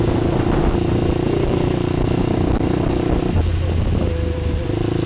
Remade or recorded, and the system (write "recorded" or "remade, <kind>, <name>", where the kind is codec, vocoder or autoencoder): recorded